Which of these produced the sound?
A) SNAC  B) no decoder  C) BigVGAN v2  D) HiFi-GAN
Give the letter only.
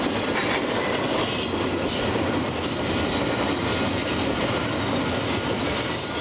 B